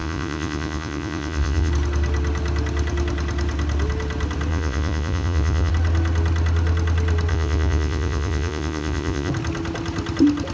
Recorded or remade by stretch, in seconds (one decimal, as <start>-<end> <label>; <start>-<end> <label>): 0.0-1.7 remade; 1.7-4.5 recorded; 4.5-5.7 remade; 5.7-7.3 recorded; 7.3-9.3 remade; 9.3-10.5 recorded